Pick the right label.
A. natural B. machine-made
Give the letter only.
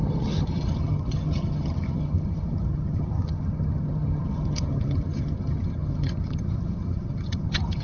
B